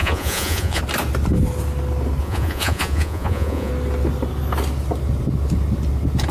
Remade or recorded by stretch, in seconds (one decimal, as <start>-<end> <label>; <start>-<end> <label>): 0.0-0.8 remade; 0.8-2.2 recorded; 2.2-3.7 remade; 3.7-6.3 recorded

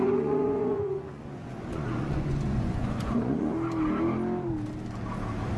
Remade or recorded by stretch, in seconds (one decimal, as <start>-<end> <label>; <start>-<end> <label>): 0.0-3.5 remade; 3.5-5.6 recorded

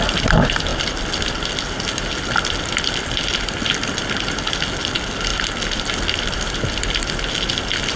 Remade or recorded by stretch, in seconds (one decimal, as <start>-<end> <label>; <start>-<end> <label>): 0.0-8.0 recorded

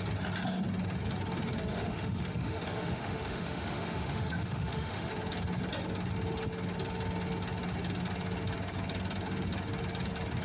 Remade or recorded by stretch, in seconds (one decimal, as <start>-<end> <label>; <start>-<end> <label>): 0.0-1.7 recorded; 1.7-5.1 remade; 5.1-10.4 recorded

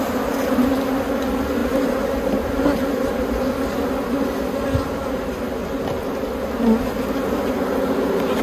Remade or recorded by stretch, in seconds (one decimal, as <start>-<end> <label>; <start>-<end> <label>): 0.0-8.4 recorded

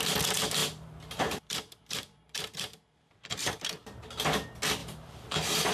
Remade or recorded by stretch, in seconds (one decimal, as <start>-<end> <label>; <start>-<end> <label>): 0.0-0.6 recorded; 0.6-4.0 remade; 4.0-4.8 recorded; 4.8-5.7 remade

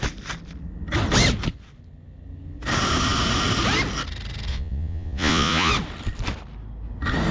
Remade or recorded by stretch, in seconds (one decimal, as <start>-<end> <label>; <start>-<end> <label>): 0.0-4.5 recorded; 4.5-5.7 remade; 5.7-7.3 recorded

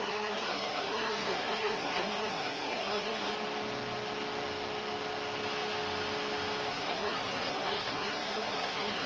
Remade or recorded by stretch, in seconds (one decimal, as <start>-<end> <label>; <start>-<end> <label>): 0.0-3.3 remade; 3.3-6.7 recorded; 6.7-9.1 remade